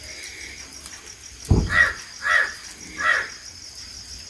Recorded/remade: recorded